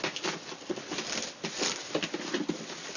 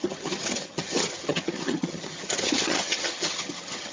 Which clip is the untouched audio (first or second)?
first